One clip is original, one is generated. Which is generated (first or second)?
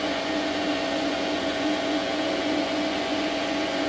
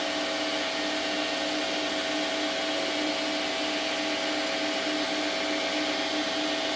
first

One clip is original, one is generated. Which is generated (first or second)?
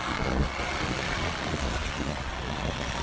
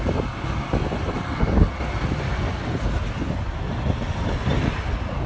first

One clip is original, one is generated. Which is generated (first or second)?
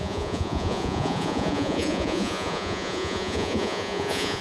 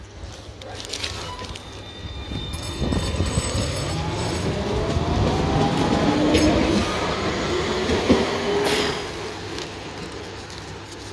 first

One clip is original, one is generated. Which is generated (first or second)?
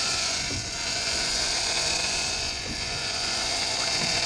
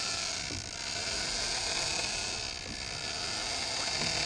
first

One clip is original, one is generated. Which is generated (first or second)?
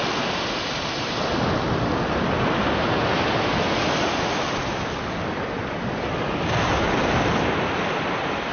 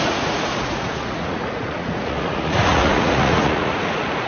second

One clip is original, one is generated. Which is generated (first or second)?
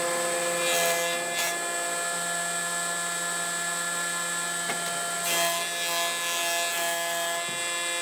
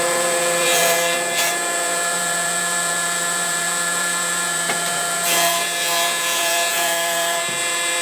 second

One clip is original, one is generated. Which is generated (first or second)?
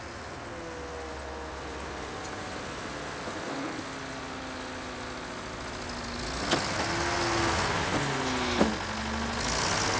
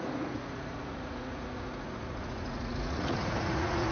second